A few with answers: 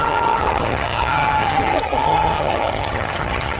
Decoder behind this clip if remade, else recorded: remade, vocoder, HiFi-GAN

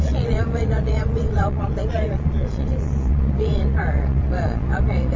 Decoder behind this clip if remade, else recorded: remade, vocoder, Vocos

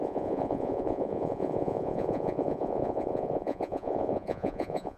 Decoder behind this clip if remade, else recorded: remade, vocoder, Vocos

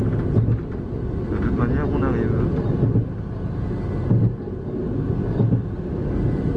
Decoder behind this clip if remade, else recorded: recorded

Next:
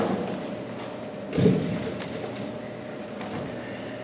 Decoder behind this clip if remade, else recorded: recorded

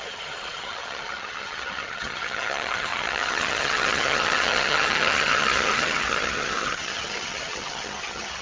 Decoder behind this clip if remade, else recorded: remade, vocoder, HiFi-GAN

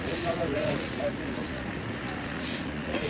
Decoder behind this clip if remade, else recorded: remade, vocoder, Vocos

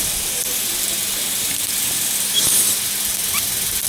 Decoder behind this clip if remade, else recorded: recorded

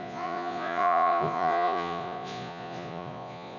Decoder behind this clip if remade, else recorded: remade, vocoder, Vocos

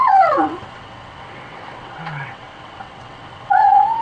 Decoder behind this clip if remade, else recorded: remade, vocoder, WaveNeXt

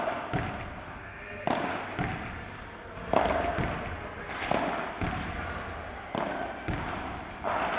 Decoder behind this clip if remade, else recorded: recorded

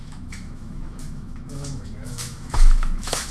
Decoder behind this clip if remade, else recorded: remade, autoencoder, DAC-VAE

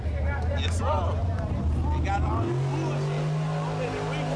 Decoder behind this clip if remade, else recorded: recorded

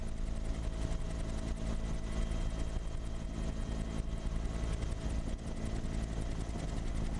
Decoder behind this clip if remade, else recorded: recorded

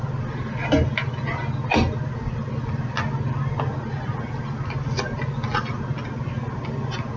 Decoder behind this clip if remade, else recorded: recorded